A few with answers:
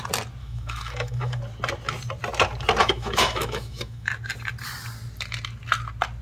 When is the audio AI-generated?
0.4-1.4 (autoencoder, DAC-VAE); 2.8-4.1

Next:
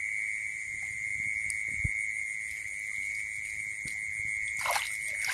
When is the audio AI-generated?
none

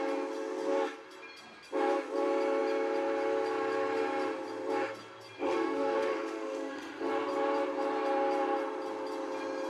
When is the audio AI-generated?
5.4-7.1 (autoencoder, DAC-VAE)

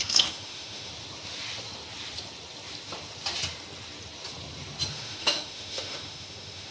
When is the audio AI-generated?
0.0-0.9 (autoencoder, DAC-VAE); 4.9-6.7

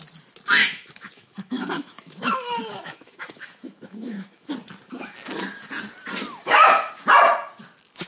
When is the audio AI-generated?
0.6-4.5 (autoencoder, DAC-VAE); 6.4-6.9

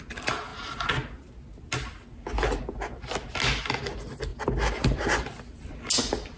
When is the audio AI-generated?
none

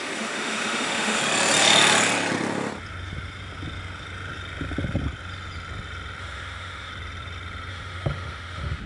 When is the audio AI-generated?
0.0-1.2 (autoencoder, DAC-VAE); 6.2-6.9; 7.7-8.9

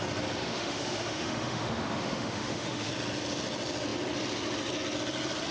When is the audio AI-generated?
0.4-2.9 (autoencoder, DAC-VAE)